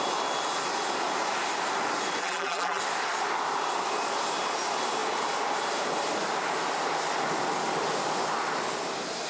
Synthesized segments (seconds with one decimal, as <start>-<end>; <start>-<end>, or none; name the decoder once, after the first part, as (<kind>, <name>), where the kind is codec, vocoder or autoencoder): 2.2-2.8 (vocoder, BigVGAN v2)

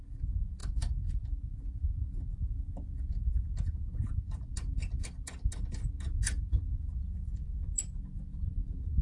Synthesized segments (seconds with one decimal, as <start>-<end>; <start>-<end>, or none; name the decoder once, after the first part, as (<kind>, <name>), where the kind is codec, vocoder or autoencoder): 0.6-1.2 (vocoder, BigVGAN v2)

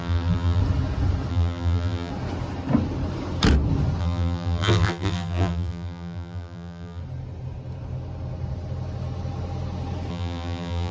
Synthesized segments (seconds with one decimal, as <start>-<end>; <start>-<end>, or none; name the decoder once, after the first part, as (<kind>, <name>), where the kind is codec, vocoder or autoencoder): 0.0-0.6 (vocoder, BigVGAN v2); 1.3-2.1; 4.0-7.0; 10.1-10.9

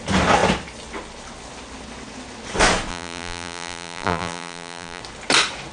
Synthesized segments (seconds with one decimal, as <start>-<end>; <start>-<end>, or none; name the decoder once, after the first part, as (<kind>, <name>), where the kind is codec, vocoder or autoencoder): 2.9-5.0 (vocoder, BigVGAN v2)

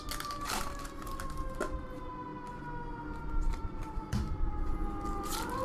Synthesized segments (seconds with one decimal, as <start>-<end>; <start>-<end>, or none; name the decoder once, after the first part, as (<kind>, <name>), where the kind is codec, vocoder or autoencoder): 3.6-4.6 (vocoder, BigVGAN v2)